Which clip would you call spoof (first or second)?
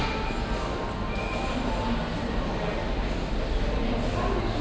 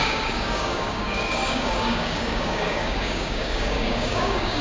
second